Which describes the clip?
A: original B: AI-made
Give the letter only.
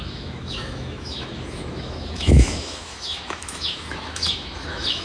B